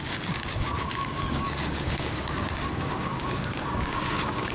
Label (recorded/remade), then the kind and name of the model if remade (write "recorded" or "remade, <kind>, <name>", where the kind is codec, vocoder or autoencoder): remade, codec, DAC